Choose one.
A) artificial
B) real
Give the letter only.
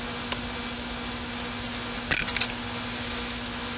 B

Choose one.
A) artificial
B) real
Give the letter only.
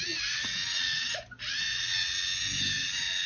B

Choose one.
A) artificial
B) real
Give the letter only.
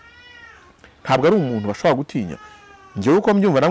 B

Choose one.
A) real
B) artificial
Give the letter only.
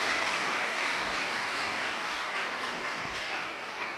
B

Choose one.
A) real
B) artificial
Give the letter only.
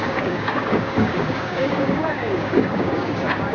B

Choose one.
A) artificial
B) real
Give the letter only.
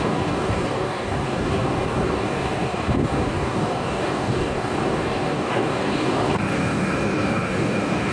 A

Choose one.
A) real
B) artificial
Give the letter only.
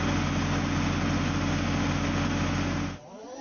A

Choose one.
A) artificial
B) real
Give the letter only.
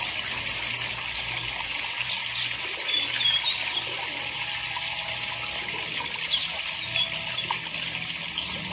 B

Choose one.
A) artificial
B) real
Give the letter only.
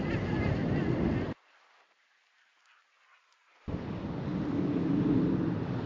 B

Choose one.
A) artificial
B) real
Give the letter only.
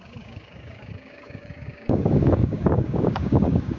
A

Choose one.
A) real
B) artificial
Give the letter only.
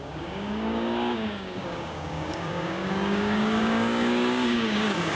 B